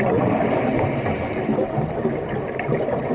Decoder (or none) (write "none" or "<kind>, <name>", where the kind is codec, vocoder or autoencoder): none